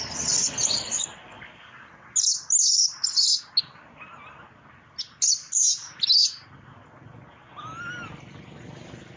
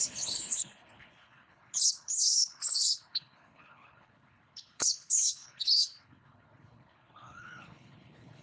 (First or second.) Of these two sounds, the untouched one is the first